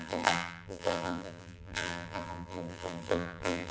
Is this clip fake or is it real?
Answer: fake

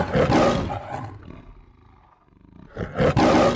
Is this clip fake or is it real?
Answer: real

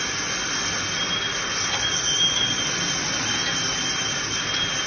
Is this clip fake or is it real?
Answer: real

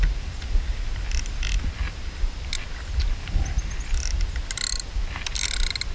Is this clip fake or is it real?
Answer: real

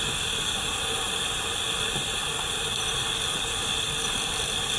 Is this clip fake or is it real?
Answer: real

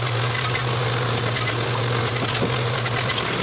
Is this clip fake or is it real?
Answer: real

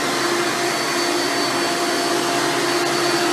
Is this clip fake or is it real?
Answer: real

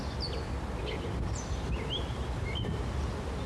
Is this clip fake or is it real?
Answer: real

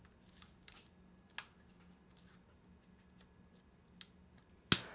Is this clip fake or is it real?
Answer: real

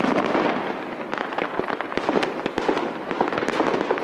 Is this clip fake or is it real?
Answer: real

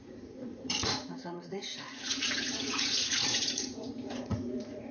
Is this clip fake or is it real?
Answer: fake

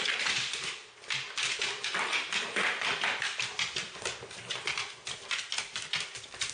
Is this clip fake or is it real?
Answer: real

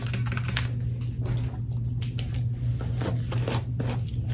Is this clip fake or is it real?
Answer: real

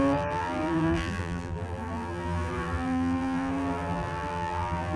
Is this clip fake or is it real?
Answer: fake